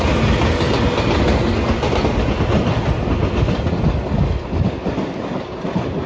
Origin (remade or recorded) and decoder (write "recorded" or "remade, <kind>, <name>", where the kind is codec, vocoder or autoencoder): recorded